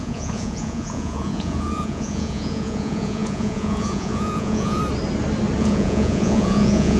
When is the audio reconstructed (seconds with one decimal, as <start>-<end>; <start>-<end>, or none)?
0.0-4.8; 5.6-7.0